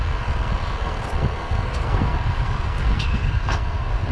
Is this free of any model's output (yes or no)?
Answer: no